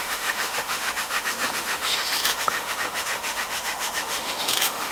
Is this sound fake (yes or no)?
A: yes